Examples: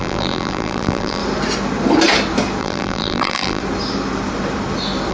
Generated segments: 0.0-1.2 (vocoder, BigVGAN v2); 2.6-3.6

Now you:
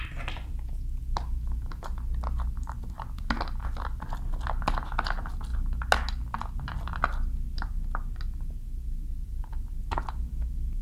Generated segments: none

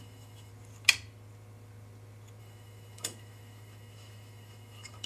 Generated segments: 0.0-0.5 (autoencoder, DAC-VAE); 2.4-5.1

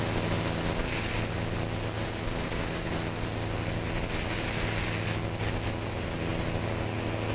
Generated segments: none